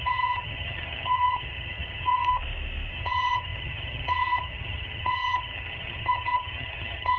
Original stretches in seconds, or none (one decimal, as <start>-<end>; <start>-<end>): 2.3-2.9